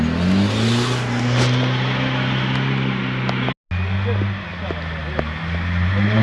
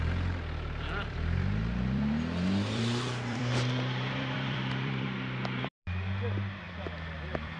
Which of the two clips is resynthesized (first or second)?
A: second